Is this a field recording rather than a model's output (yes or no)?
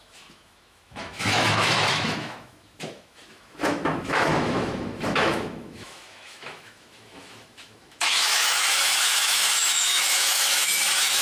no